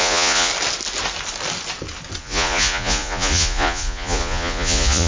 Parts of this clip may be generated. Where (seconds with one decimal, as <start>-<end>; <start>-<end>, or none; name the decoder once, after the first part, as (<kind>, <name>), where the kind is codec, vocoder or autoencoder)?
0.0-0.5 (vocoder, Vocos); 2.2-5.1